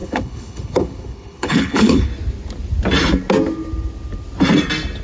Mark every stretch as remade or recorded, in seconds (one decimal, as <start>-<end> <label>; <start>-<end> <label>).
0.0-2.1 remade; 2.1-5.0 recorded